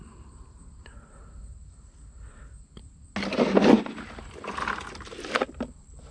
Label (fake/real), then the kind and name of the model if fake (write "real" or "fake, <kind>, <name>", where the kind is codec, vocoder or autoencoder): real